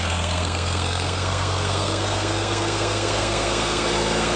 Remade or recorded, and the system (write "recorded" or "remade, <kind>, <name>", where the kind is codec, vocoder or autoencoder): remade, codec, SNAC